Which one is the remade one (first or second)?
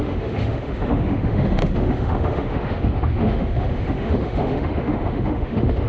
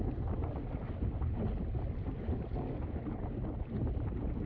first